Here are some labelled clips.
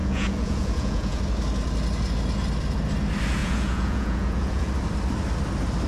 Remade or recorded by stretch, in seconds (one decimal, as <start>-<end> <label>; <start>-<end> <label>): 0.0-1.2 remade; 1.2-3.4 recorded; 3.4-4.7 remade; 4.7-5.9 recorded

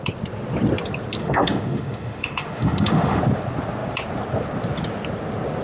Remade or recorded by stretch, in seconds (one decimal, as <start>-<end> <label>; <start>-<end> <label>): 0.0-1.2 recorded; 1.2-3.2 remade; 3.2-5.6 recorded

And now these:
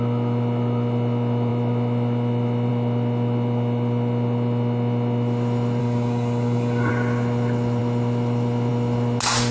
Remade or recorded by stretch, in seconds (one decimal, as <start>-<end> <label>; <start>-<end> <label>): 0.0-5.8 recorded; 5.8-6.9 remade; 6.9-9.5 recorded

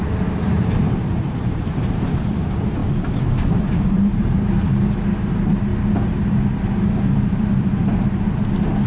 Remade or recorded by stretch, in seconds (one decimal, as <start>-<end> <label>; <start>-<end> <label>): 0.0-2.8 remade; 2.8-3.6 recorded; 3.6-5.7 remade; 5.7-6.6 recorded; 6.6-8.9 remade